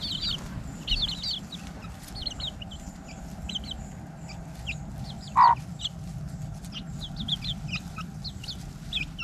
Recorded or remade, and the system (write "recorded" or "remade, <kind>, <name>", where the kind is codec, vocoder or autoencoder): recorded